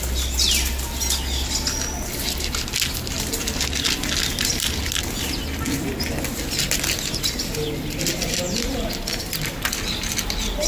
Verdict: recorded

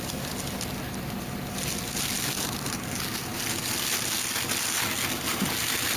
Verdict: recorded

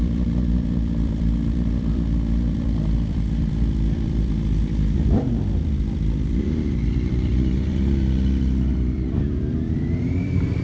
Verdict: remade